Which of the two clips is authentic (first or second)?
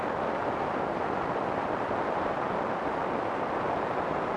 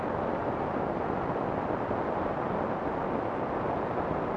second